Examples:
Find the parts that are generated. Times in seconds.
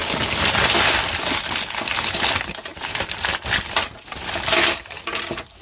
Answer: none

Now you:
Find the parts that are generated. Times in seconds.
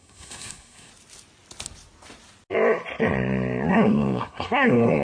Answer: 0.0-0.9 (codec, SNAC); 3.7-5.0